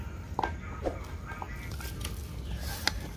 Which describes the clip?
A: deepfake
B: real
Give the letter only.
B